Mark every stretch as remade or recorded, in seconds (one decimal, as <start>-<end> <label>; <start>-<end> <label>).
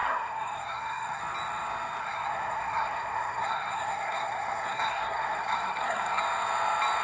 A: 0.0-1.2 remade; 1.2-2.0 recorded; 2.0-6.2 remade; 6.2-7.0 recorded